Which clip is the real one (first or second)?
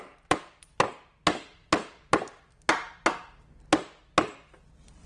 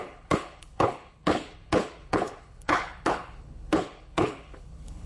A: first